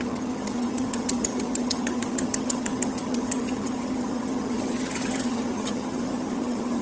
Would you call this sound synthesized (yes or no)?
yes